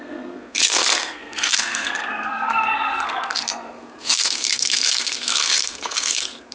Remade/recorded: remade